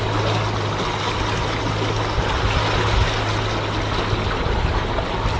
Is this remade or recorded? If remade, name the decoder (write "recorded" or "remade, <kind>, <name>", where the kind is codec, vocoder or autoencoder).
recorded